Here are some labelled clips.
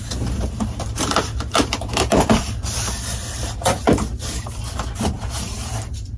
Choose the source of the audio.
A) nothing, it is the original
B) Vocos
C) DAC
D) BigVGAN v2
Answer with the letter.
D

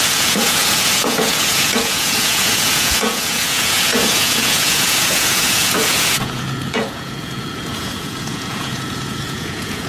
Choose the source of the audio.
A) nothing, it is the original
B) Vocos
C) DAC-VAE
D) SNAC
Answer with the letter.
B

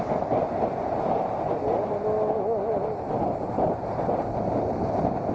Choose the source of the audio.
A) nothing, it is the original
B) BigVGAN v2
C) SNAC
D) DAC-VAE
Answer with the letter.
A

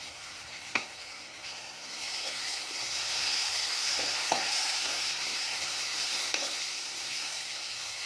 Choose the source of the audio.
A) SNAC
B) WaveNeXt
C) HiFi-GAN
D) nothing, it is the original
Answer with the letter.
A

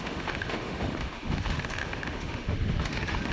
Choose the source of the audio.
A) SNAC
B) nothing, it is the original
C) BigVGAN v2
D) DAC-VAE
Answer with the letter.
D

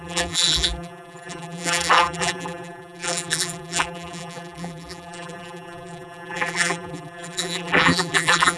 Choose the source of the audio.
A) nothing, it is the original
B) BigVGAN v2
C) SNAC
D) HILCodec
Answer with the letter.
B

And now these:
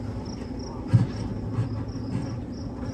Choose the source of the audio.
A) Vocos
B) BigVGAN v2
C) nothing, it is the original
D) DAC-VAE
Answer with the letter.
C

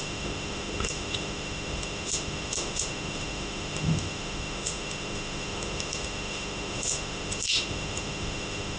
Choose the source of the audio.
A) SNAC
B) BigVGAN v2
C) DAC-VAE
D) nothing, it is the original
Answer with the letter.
C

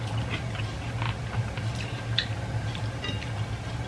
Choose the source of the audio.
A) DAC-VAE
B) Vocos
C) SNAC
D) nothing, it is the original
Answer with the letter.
D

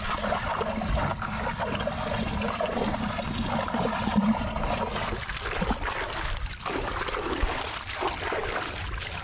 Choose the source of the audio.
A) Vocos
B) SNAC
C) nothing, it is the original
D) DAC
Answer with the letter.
C